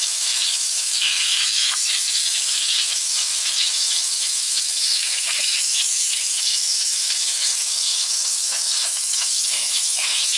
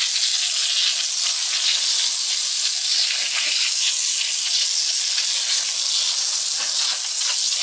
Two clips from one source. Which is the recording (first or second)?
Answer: second